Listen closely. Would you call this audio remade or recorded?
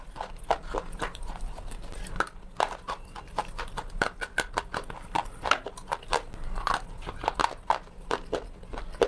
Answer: recorded